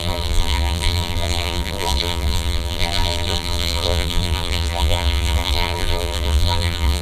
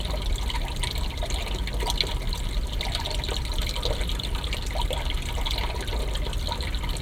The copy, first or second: first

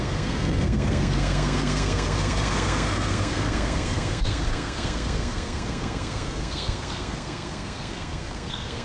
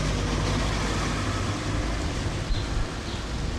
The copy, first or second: first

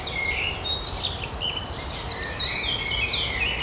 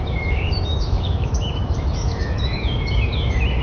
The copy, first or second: second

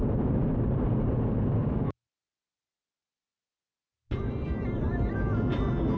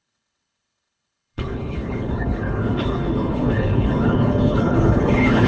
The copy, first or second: second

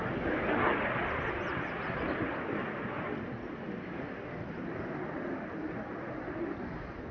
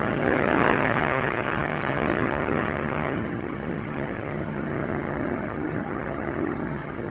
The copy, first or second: second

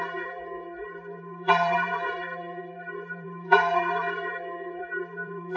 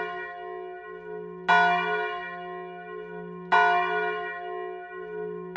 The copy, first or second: first